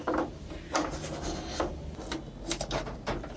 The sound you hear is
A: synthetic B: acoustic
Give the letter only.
B